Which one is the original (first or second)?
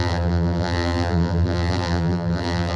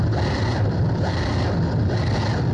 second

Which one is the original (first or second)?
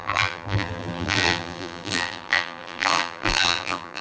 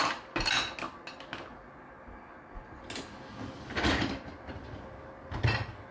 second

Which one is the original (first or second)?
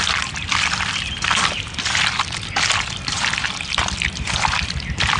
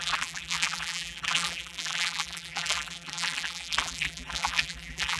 first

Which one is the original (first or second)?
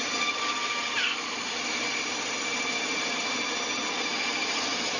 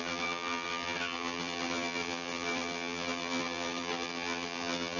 first